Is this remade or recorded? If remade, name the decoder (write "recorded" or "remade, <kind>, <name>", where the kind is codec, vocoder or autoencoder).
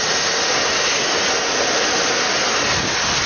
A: recorded